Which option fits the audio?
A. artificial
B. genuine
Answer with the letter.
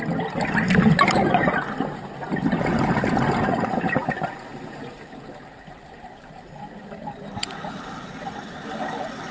B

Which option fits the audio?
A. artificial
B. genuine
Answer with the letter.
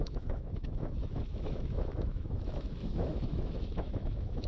A